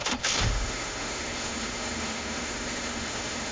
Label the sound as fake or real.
fake